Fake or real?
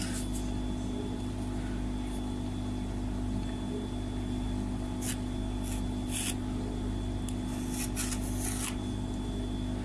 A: real